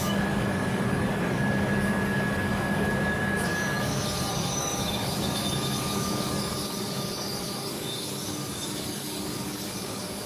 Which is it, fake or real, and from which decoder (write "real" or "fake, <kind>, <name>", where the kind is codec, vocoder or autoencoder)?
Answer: fake, codec, DAC